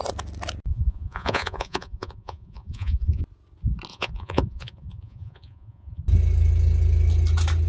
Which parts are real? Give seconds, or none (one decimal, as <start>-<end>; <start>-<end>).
0.0-0.7; 3.2-3.9; 6.0-7.7